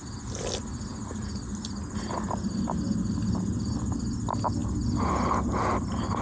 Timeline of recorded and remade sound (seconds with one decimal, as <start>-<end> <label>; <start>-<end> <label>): 0.0-6.2 recorded